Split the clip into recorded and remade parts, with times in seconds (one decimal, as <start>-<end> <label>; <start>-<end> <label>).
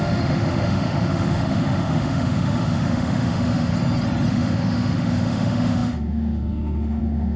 0.0-3.7 remade; 3.7-4.3 recorded; 4.3-7.4 remade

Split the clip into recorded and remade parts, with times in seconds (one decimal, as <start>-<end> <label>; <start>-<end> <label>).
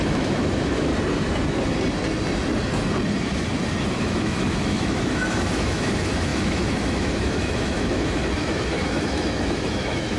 0.0-0.9 remade; 0.9-4.0 recorded; 4.0-10.2 remade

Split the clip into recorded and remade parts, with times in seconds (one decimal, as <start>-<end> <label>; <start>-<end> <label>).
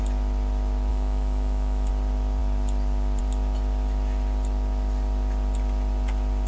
0.0-0.9 recorded; 0.9-1.9 remade; 1.9-6.5 recorded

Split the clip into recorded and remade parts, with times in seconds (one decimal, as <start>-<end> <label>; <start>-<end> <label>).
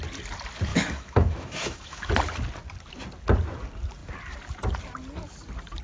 0.0-0.7 recorded; 0.7-2.1 remade; 2.1-5.8 recorded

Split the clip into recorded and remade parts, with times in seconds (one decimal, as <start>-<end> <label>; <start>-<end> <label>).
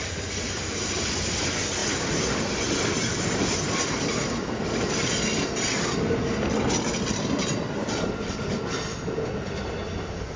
0.0-10.4 recorded